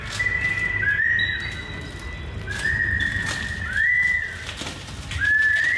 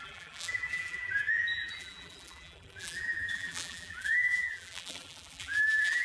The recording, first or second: first